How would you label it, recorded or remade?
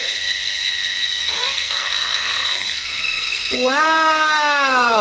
remade